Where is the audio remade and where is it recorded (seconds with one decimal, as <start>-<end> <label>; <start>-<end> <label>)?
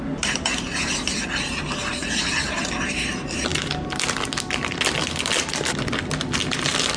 0.0-7.0 recorded